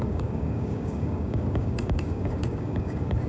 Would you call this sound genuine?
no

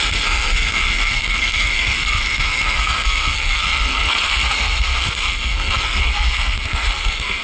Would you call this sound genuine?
no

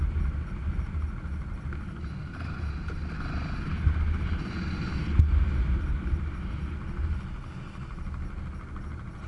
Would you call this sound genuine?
yes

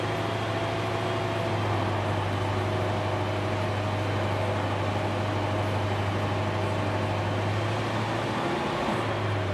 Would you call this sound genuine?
yes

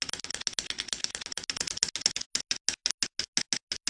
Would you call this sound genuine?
yes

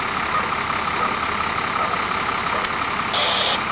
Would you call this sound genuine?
yes